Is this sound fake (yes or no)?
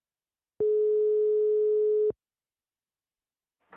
no